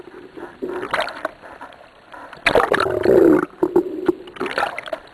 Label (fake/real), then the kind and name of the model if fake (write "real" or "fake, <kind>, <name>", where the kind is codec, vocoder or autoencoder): real